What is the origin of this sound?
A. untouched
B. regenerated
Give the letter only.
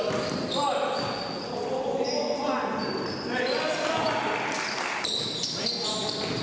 A